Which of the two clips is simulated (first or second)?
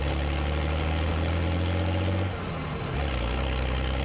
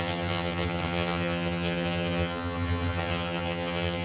second